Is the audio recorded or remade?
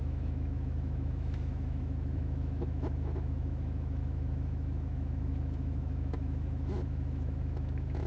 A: remade